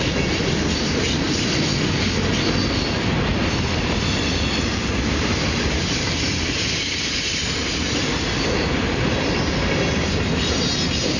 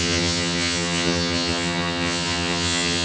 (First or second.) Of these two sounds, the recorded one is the first